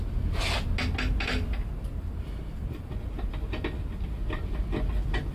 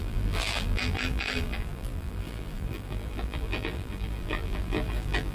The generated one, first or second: second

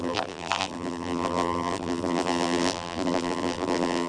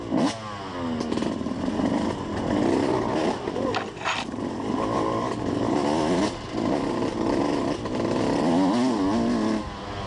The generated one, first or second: first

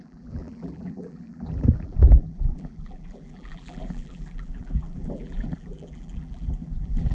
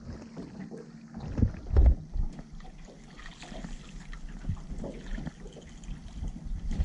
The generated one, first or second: first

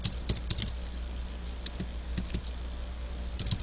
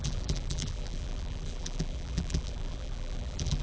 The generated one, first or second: second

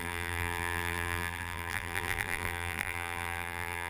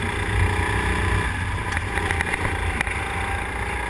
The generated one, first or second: first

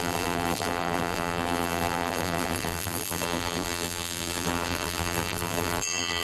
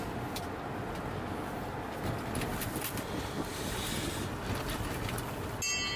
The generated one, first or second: first